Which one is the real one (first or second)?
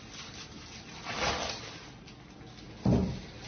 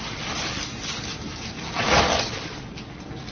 first